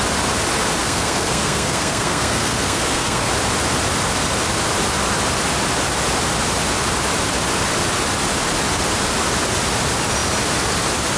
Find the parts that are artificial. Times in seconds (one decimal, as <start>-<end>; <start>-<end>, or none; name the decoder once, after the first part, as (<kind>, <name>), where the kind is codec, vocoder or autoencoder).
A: 0.8-3.3 (codec, SNAC)